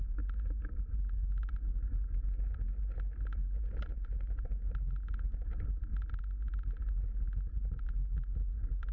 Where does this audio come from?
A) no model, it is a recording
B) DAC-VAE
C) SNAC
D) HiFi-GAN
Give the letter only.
A